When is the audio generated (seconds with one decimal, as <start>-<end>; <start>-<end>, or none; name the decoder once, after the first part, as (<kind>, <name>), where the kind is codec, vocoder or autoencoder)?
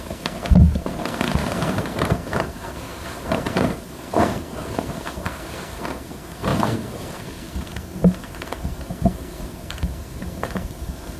0.0-11.2 (codec, SNAC)